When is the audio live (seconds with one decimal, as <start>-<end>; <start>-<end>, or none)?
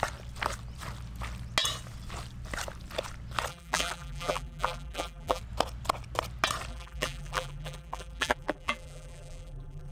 0.0-3.5; 5.4-6.7